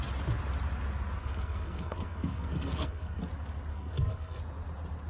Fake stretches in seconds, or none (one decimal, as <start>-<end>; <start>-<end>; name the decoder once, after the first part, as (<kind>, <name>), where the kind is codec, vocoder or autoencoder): 1.2-3.2 (codec, SNAC); 3.7-4.4